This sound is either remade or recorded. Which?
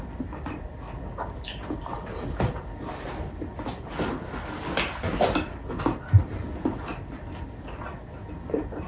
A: recorded